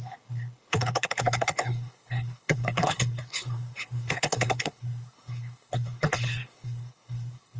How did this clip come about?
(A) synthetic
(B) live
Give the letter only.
A